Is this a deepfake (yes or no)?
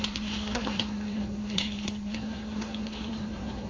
yes